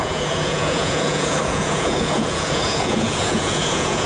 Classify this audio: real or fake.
fake